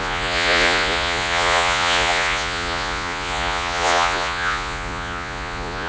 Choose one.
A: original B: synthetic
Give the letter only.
B